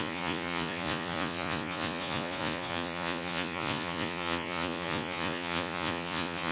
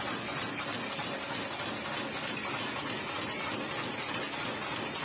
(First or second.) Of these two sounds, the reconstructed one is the first